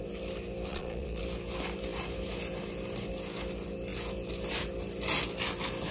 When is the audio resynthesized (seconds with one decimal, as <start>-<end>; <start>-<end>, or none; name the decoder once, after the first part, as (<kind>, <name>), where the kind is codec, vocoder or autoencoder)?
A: 0.7-1.2 (vocoder, Vocos)